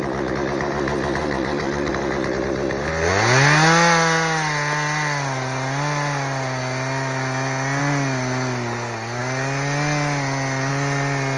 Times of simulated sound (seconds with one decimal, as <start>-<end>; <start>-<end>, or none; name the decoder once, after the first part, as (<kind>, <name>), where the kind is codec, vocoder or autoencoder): 1.2-1.9 (vocoder, Vocos)